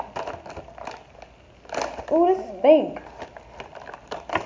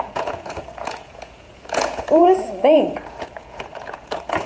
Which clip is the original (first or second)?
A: first